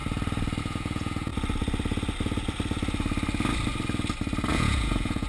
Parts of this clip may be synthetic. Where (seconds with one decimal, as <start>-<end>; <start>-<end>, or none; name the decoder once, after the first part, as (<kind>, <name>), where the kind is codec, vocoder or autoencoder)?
0.6-1.3 (vocoder, Vocos); 4.5-5.3

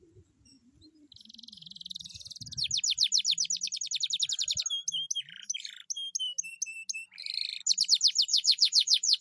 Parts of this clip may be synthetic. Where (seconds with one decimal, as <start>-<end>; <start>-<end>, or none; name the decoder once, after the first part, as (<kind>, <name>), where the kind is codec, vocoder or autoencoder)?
8.3-9.2 (vocoder, Vocos)

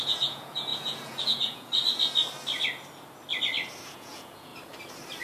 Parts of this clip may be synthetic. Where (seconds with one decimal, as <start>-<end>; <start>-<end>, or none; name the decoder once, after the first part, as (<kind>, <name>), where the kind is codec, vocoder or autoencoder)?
0.0-1.8 (vocoder, Vocos); 3.9-4.5

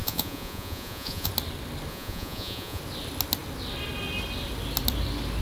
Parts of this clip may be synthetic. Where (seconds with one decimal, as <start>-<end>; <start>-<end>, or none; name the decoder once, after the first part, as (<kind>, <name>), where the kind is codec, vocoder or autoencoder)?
0.0-1.3 (vocoder, Vocos); 1.9-2.8

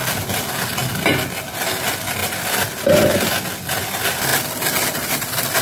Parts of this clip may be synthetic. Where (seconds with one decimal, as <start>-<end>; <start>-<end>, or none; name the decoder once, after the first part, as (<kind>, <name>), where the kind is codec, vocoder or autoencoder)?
none

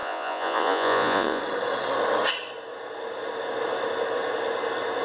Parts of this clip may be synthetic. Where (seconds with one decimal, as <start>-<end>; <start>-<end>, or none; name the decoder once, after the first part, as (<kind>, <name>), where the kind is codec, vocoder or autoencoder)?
0.0-1.4 (vocoder, Vocos)

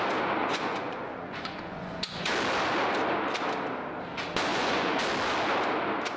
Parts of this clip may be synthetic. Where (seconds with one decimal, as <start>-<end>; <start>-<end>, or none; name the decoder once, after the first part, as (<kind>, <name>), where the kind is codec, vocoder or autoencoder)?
0.4-2.3 (vocoder, Vocos); 4.5-5.0

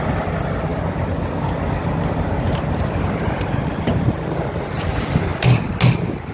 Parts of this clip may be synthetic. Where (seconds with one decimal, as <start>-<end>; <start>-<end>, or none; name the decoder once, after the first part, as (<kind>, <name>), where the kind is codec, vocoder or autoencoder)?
none